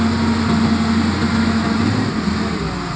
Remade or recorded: recorded